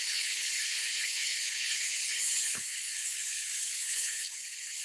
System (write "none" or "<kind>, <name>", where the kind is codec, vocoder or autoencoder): codec, HILCodec